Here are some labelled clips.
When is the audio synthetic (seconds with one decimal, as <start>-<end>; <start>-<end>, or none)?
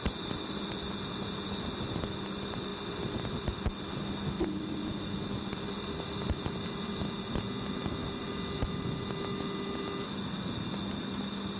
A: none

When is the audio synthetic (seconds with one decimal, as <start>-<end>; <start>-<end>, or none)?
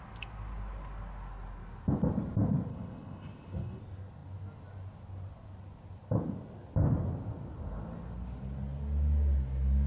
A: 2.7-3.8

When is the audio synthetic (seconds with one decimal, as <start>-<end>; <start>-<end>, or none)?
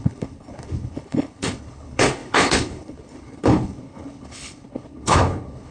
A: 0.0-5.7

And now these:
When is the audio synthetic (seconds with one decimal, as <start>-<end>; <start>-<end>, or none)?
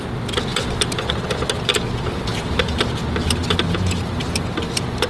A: none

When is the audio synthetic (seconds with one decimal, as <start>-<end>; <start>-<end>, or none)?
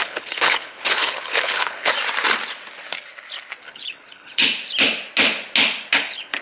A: 0.0-1.9; 3.6-4.4; 6.0-6.4